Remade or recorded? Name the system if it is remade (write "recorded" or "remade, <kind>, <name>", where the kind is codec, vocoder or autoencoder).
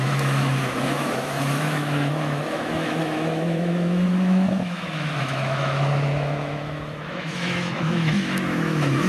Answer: remade, autoencoder, DAC-VAE